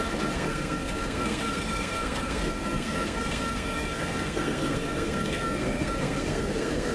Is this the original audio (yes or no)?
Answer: no